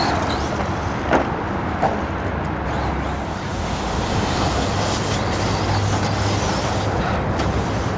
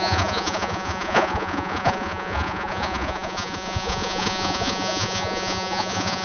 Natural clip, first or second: first